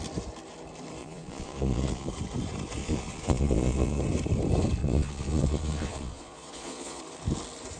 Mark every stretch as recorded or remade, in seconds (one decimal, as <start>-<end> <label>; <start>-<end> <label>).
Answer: 0.0-1.0 recorded; 1.0-2.1 remade; 2.1-2.8 recorded; 2.8-4.0 remade; 4.0-4.8 recorded; 4.8-7.0 remade; 7.0-7.8 recorded